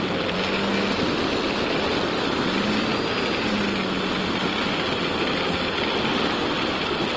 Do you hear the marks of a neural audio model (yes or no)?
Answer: no